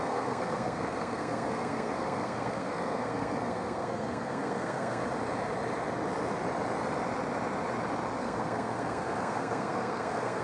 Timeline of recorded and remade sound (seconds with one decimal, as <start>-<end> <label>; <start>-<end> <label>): 0.0-5.0 remade; 5.0-8.2 recorded; 8.2-10.4 remade